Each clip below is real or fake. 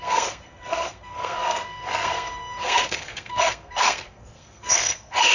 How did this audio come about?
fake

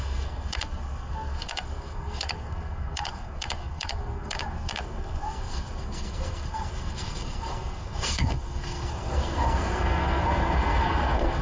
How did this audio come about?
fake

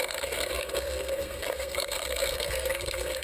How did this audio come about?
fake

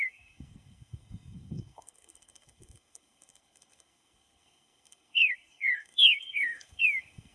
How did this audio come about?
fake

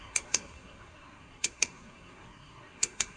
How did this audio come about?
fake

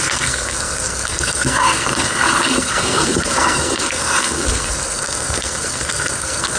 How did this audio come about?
fake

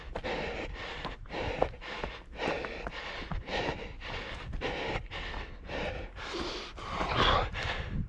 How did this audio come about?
real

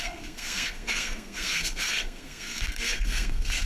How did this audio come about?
fake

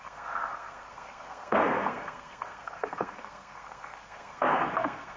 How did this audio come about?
fake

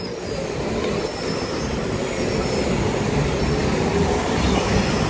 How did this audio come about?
real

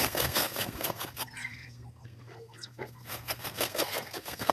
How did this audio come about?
fake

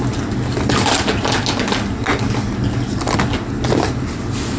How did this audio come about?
real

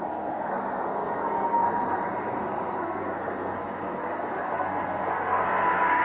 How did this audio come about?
fake